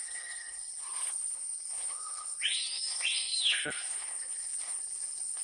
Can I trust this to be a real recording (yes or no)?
no